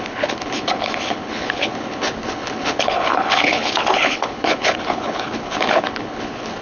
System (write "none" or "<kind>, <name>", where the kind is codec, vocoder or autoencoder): codec, HILCodec